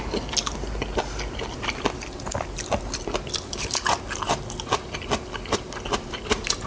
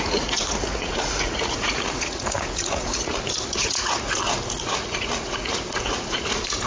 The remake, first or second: second